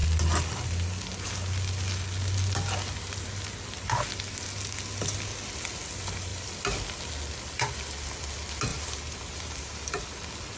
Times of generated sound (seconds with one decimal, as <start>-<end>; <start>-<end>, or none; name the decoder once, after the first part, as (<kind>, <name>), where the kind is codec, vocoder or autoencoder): 8.7-10.0 (vocoder, BigVGAN v2)